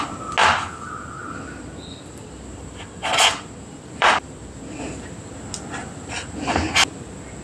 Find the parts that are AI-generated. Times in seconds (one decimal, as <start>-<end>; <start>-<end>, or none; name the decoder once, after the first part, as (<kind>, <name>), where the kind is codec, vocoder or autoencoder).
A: 0.4-4.8 (vocoder, BigVGAN v2); 5.8-6.6